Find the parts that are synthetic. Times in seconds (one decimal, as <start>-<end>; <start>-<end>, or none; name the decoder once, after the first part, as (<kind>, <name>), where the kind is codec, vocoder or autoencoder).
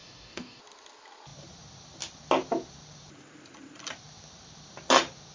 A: 0.0-0.6 (codec, DAC)